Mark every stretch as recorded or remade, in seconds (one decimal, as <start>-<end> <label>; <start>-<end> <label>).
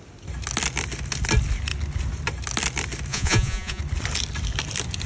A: 0.0-3.1 recorded; 3.1-3.8 remade; 3.8-5.1 recorded